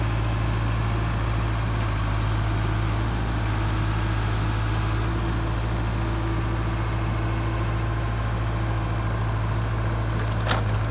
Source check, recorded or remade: recorded